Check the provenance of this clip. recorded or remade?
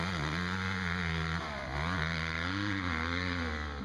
recorded